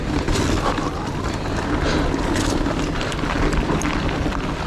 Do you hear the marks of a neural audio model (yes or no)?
no